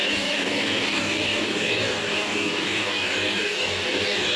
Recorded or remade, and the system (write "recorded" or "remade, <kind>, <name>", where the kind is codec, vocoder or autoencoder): remade, codec, DAC